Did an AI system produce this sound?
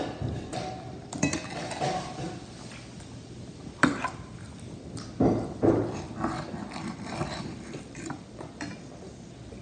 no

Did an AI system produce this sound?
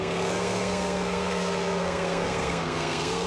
yes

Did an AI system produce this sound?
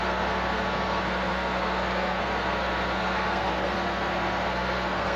yes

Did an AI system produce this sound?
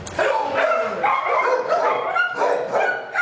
no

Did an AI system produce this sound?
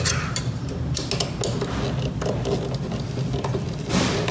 no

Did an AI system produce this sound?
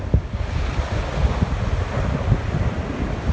no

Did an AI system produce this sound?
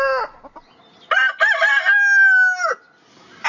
no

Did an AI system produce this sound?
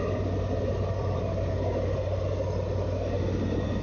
no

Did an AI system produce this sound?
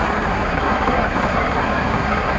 yes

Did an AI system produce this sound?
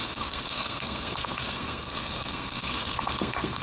yes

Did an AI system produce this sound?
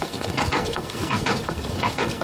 yes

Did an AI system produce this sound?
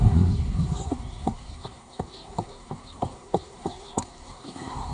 yes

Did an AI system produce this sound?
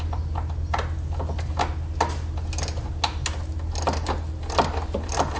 no